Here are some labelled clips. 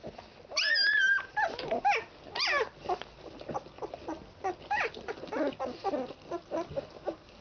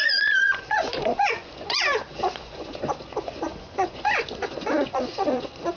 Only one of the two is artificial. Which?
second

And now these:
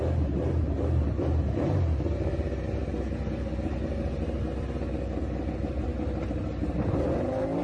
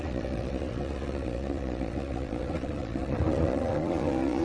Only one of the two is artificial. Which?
second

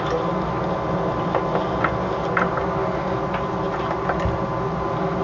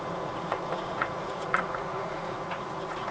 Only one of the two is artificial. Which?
second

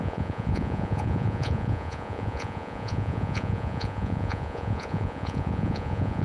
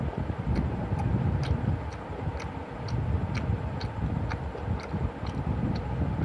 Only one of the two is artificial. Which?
first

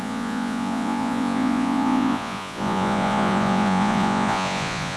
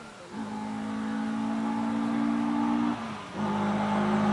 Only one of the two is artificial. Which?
first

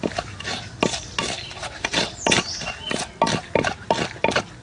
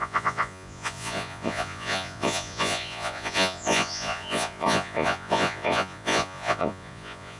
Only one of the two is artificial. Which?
second